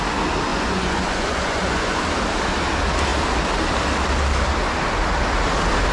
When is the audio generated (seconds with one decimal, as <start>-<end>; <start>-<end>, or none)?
0.5-2.0